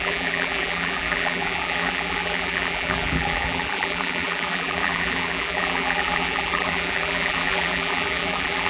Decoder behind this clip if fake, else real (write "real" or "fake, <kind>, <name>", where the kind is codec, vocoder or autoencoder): fake, vocoder, BigVGAN v2